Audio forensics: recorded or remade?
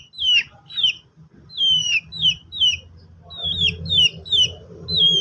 recorded